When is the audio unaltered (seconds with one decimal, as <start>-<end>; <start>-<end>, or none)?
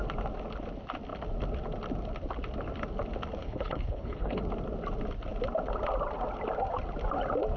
0.0-3.4; 4.4-7.6